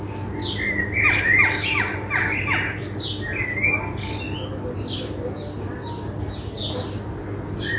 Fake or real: real